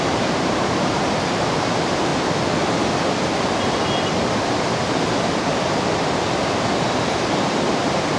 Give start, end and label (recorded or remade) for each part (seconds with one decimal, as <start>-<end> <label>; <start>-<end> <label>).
0.0-2.1 remade; 2.1-7.0 recorded; 7.0-8.2 remade